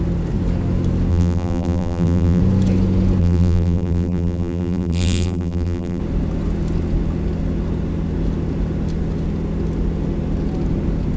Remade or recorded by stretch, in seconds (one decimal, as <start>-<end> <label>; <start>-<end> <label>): 0.0-1.1 recorded; 1.1-2.4 remade; 2.4-3.2 recorded; 3.2-6.0 remade; 6.0-11.2 recorded

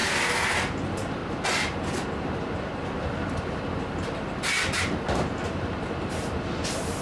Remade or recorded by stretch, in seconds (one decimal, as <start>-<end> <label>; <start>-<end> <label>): 0.0-0.5 recorded; 0.5-1.2 remade; 1.2-4.8 recorded; 4.8-7.0 remade